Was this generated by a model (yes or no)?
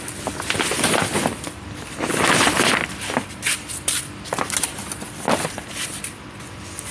yes